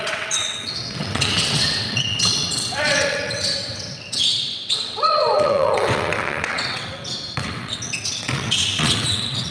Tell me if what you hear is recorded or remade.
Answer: remade